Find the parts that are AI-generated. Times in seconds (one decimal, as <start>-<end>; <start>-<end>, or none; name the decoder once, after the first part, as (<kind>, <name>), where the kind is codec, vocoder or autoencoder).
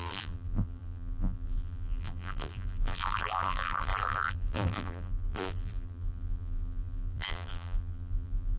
0.0-8.6 (vocoder, BigVGAN v2)